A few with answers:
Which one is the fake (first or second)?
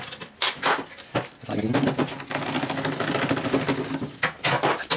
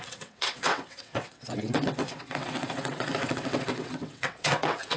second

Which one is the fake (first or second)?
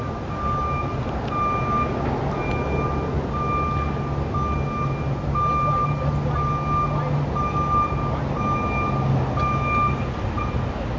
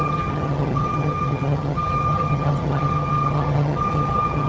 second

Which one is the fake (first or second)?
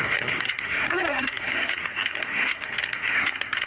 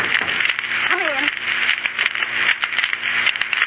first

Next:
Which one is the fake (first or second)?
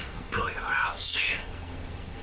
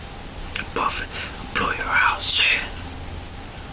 first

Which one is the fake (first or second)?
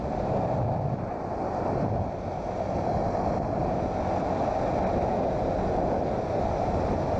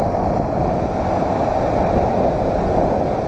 second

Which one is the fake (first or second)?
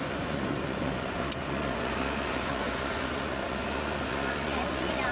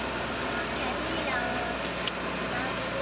first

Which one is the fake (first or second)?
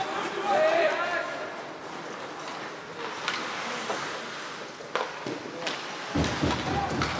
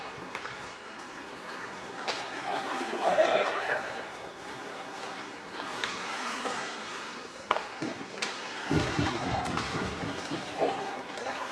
second